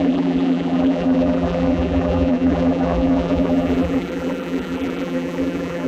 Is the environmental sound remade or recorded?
remade